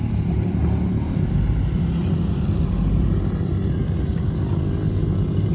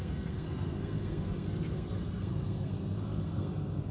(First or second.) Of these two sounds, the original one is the first